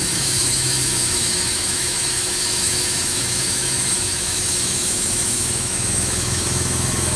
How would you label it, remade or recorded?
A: remade